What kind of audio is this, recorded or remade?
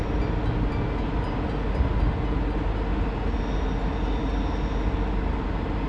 recorded